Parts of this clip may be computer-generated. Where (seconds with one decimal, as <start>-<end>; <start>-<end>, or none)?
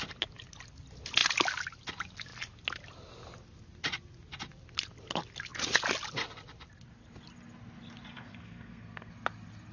8.1-9.1